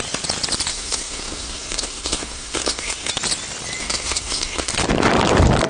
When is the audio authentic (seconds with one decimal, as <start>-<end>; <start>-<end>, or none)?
0.0-0.7; 3.1-3.8; 4.7-5.7